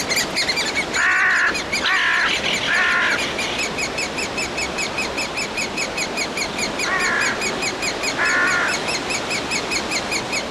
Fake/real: real